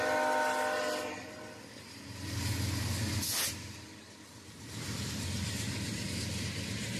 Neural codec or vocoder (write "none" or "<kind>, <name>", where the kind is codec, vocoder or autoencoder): none